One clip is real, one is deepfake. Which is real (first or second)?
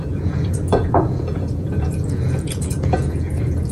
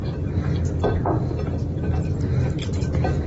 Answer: second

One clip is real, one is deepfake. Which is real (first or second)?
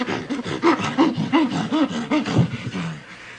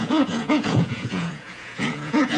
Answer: first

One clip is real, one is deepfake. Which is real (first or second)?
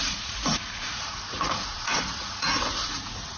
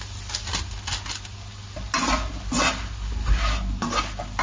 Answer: second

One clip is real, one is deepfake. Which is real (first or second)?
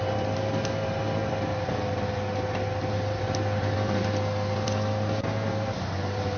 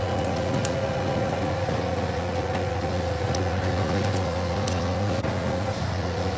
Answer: first